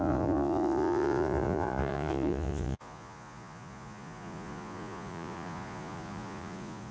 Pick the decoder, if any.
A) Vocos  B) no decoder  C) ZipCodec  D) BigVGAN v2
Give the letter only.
A